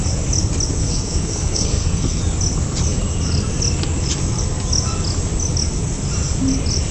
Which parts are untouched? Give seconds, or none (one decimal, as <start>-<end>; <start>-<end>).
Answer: 0.0-0.8; 2.2-6.9